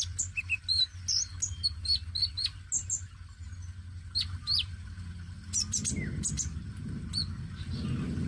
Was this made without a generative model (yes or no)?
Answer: yes